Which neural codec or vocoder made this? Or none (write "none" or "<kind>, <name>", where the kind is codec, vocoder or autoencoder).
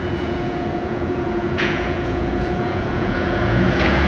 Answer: vocoder, Vocos